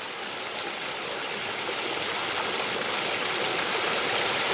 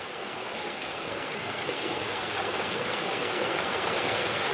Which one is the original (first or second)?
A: first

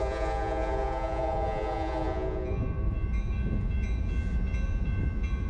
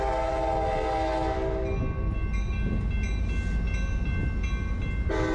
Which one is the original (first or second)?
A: second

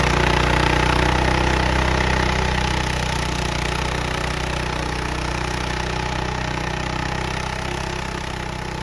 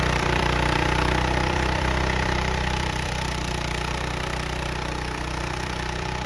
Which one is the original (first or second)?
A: first